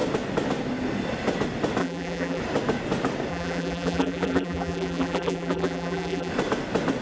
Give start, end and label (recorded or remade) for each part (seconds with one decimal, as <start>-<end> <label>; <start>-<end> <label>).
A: 0.0-1.8 recorded; 1.8-2.4 remade; 2.4-3.3 recorded; 3.3-6.3 remade; 6.3-7.0 recorded